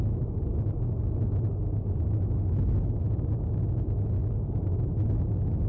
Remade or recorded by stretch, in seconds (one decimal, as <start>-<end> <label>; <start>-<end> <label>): 0.0-5.7 recorded